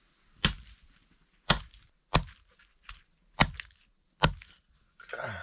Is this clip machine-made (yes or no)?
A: no